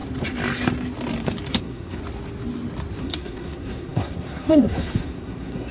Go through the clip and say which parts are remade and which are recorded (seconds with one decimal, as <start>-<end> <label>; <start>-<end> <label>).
0.0-1.6 recorded; 1.6-2.0 remade; 2.0-3.0 recorded; 3.0-5.7 remade

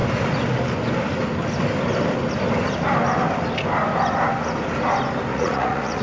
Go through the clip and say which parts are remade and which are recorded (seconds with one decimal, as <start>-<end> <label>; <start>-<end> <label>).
0.0-5.3 recorded; 5.3-6.0 remade

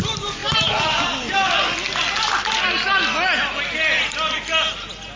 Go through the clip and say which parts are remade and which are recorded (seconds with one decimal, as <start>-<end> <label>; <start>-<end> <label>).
0.0-5.2 recorded

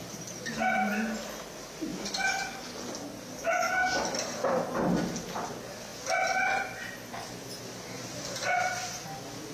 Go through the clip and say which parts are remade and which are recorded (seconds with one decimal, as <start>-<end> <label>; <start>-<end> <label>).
0.0-9.5 recorded

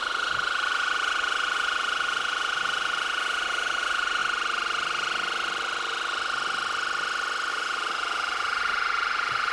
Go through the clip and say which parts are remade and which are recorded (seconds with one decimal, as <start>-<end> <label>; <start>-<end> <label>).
0.0-4.2 remade; 4.2-7.5 recorded; 7.5-9.5 remade

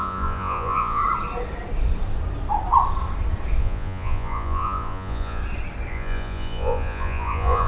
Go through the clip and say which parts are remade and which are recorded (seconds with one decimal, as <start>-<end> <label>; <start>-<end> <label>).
0.0-1.0 remade; 1.0-3.6 recorded; 3.6-5.4 remade; 5.4-5.9 recorded; 5.9-7.7 remade

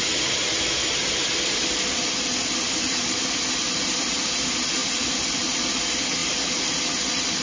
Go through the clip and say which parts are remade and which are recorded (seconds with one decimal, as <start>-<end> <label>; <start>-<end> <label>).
0.0-7.4 recorded